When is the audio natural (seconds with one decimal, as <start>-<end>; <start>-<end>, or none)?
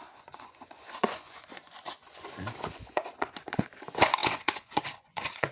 none